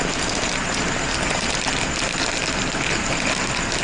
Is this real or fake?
real